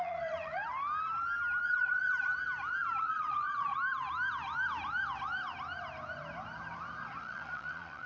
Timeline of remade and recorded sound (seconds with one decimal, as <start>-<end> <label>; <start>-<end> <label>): 0.0-0.6 remade; 0.6-1.6 recorded; 1.6-2.3 remade; 2.3-3.0 recorded; 3.0-3.7 remade; 3.7-7.2 recorded; 7.2-8.1 remade